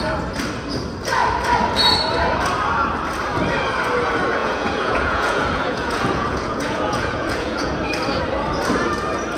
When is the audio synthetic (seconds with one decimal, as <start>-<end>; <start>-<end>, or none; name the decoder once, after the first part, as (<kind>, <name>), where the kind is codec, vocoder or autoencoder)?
4.4-7.7 (vocoder, Vocos)